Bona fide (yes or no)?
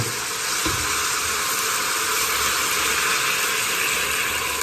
yes